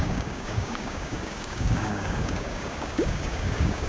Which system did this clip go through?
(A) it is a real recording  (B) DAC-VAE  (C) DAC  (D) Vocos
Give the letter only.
C